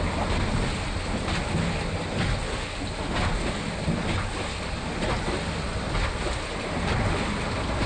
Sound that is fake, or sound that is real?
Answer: real